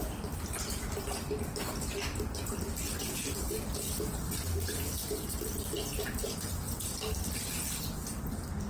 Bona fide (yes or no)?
yes